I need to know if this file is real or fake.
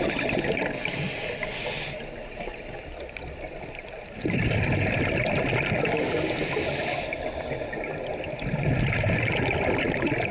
real